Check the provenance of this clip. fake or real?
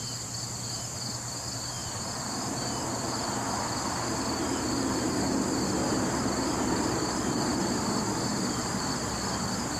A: fake